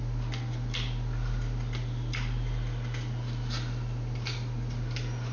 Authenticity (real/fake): real